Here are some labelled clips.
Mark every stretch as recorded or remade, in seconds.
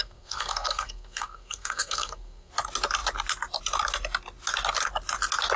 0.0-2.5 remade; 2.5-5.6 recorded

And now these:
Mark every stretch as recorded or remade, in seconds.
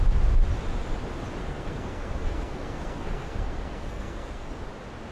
0.0-1.4 recorded; 1.4-4.5 remade; 4.5-5.1 recorded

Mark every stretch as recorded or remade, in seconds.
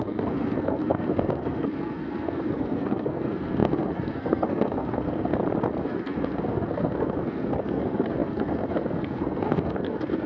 0.0-5.3 remade; 5.3-5.8 recorded; 5.8-10.3 remade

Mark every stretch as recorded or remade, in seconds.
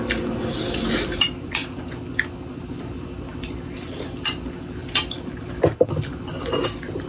0.0-7.1 recorded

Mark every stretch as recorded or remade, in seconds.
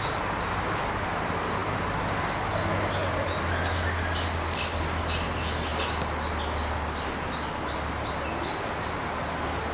0.0-9.7 recorded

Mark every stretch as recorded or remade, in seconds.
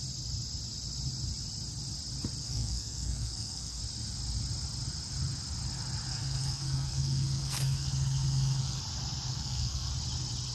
0.0-2.4 recorded; 2.4-3.8 remade; 3.8-6.1 recorded; 6.1-8.8 remade; 8.8-9.3 recorded; 9.3-9.9 remade; 9.9-10.5 recorded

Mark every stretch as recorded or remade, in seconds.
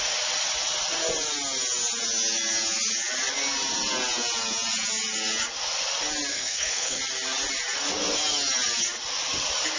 0.0-6.3 recorded; 6.3-7.0 remade; 7.0-9.8 recorded